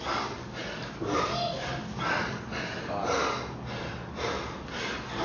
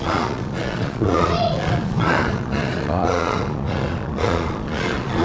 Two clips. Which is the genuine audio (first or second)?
first